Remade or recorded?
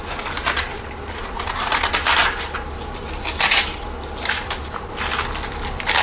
recorded